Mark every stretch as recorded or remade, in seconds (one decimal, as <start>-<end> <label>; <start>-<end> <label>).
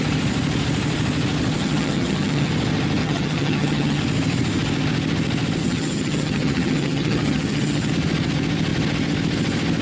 0.0-1.6 recorded; 1.6-2.5 remade; 2.5-3.0 recorded; 3.0-4.0 remade; 4.0-5.6 recorded; 5.6-7.9 remade; 7.9-9.8 recorded